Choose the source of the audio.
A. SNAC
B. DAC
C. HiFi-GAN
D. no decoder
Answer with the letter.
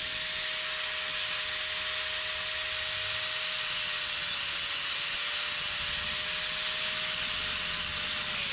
D